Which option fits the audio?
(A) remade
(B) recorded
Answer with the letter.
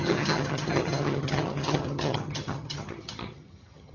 A